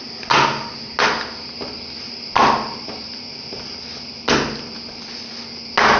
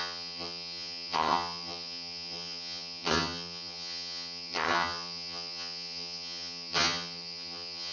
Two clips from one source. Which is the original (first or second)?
first